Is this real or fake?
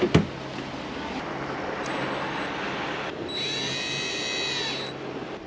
real